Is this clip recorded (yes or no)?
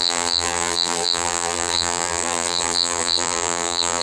no